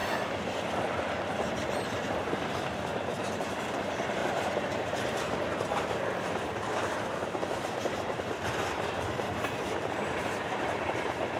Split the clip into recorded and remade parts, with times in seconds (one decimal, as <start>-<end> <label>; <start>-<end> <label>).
0.0-2.6 recorded; 2.6-11.4 remade